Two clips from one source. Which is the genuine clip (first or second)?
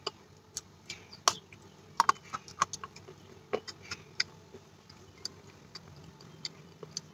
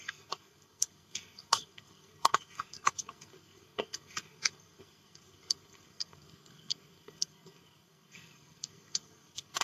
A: first